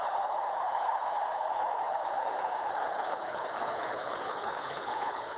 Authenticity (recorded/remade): remade